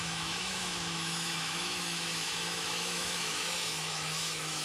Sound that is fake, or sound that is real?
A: fake